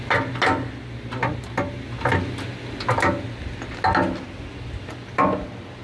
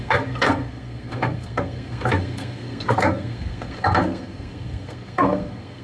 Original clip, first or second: first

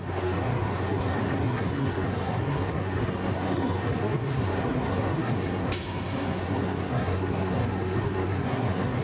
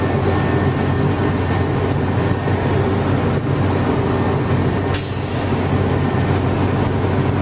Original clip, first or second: second